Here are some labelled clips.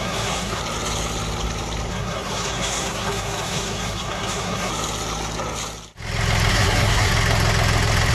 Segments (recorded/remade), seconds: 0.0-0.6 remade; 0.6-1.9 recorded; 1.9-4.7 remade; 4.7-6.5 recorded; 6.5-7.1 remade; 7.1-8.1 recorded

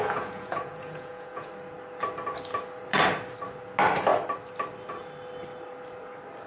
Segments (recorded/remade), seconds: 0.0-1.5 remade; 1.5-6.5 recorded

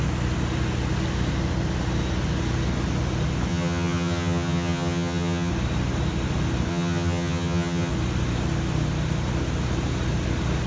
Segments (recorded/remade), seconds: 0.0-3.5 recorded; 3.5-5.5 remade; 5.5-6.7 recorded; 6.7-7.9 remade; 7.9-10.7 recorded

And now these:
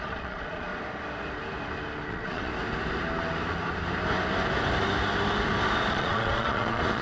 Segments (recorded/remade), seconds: 0.0-0.7 remade; 0.7-2.1 recorded; 2.1-2.5 remade; 2.5-5.9 recorded; 5.9-7.0 remade